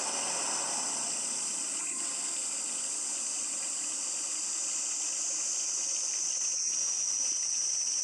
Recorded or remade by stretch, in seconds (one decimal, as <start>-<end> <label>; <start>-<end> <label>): 0.0-8.0 recorded